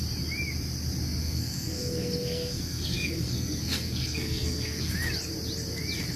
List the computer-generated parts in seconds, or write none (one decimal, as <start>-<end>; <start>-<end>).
1.2-4.9